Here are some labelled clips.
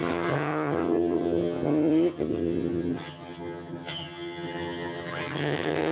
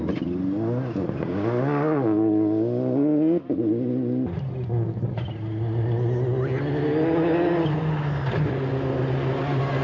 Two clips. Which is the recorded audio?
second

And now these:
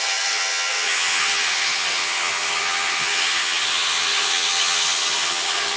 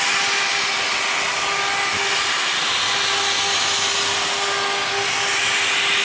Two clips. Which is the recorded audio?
second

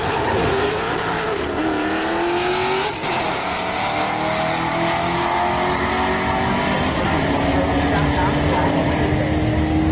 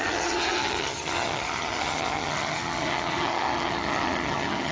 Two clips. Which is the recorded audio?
first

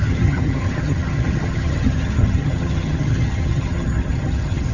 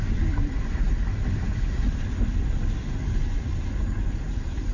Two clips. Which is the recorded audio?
second